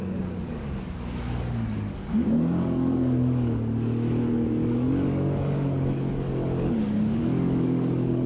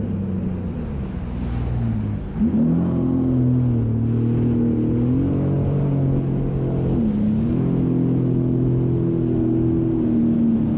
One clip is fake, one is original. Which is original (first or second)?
second